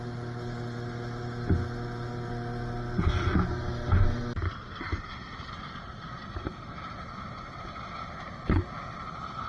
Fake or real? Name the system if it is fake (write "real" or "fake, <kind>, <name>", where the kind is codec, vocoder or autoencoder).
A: real